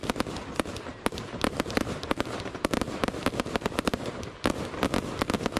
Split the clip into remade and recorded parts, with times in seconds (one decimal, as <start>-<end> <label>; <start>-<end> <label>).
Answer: 0.0-0.9 recorded; 0.9-4.3 remade; 4.3-5.6 recorded